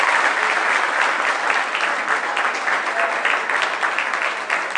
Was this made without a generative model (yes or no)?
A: yes